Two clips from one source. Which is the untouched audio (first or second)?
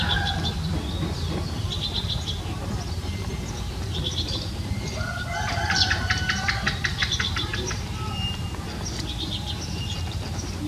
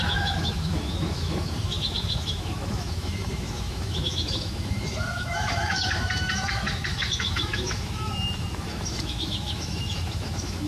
first